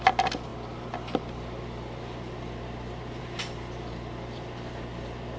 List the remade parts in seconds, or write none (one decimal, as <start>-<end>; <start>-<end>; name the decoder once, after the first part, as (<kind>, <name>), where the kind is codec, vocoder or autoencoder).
none